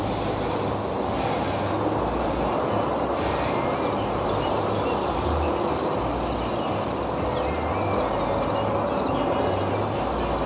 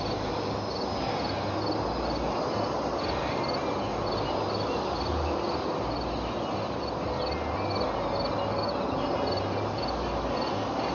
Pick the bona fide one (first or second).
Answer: second